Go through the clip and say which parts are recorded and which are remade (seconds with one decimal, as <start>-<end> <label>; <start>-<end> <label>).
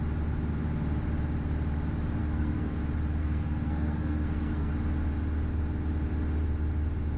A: 0.0-2.2 recorded; 2.2-2.8 remade; 2.8-3.2 recorded; 3.2-4.7 remade; 4.7-7.2 recorded